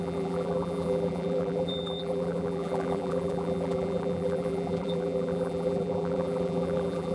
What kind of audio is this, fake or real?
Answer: fake